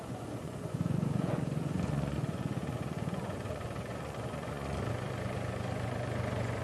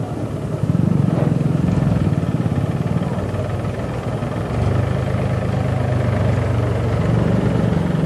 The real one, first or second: second